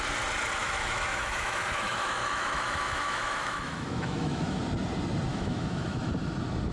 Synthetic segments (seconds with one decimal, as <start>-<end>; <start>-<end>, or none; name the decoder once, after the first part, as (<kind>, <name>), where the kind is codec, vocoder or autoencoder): 0.6-4.6 (autoencoder, DAC-VAE); 5.3-6.1